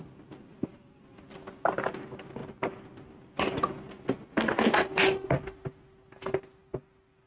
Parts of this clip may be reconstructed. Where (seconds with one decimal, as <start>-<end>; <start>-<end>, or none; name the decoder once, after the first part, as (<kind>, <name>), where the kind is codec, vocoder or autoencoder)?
none